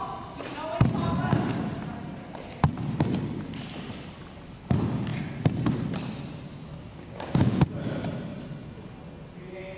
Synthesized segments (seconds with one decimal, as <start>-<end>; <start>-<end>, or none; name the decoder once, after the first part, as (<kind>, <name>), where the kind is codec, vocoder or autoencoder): 6.9-7.7 (codec, DAC)